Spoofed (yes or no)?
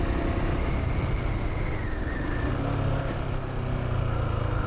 no